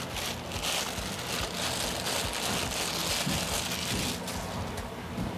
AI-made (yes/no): no